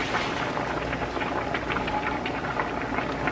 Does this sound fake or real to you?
real